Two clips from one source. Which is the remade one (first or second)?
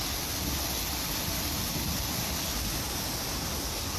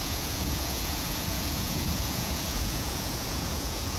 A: second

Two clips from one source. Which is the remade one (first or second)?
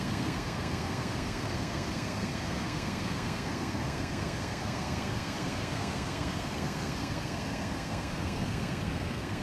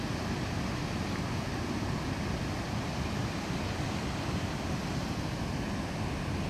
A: first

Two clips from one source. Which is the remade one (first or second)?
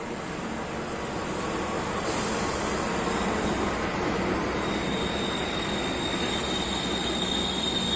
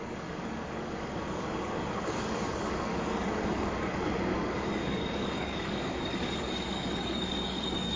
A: second